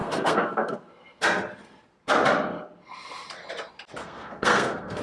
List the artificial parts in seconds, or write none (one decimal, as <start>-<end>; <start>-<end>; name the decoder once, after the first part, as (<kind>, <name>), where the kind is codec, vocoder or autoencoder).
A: 0.0-0.9 (codec, SNAC); 4.0-5.0